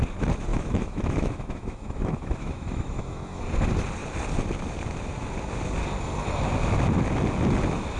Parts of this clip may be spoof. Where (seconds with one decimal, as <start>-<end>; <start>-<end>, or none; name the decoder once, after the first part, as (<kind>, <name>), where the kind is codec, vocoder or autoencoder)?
0.5-3.4 (autoencoder, DAC-VAE)